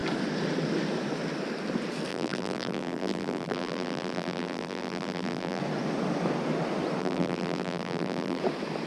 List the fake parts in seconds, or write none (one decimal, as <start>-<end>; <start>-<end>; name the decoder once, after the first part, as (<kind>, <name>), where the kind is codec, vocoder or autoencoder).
2.1-5.6 (vocoder, BigVGAN v2); 7.0-8.4